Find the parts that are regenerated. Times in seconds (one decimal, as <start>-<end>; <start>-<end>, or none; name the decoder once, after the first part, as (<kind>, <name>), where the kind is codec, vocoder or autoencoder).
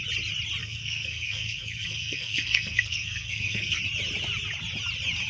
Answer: 0.6-3.8 (codec, SNAC)